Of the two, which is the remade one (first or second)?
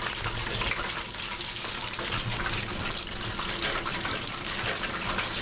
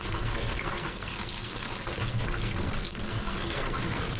second